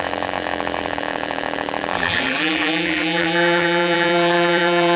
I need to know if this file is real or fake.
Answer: fake